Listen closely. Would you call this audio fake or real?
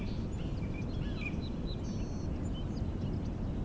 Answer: real